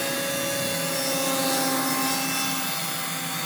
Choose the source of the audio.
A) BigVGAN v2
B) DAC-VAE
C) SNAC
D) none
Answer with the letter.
D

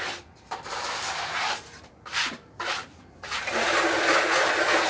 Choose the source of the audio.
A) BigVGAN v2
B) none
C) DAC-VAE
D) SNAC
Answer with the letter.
A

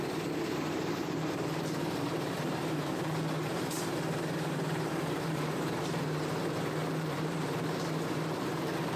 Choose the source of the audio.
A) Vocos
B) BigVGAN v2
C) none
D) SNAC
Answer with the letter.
B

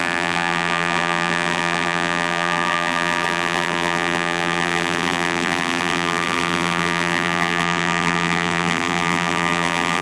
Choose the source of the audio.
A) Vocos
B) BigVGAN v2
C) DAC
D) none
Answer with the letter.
B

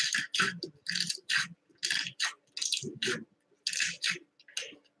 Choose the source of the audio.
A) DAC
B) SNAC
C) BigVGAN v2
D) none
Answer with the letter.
D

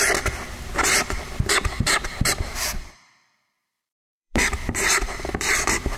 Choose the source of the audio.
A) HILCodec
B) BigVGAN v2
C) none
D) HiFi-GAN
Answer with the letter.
B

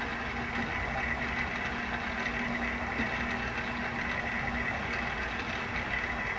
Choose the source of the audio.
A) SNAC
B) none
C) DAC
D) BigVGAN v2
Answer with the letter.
B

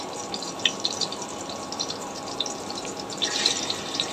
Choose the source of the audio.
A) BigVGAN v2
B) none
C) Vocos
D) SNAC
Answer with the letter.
A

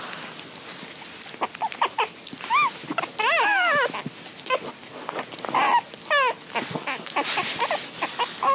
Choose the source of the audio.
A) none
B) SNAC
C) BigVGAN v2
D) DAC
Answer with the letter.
A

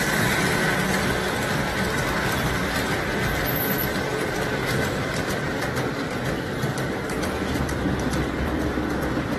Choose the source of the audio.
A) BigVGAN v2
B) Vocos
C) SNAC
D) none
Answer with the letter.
A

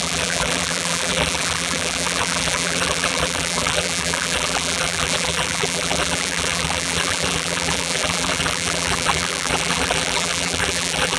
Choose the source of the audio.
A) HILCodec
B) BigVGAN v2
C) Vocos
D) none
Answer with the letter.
B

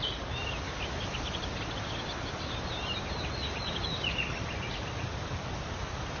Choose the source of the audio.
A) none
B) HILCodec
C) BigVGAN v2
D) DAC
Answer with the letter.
A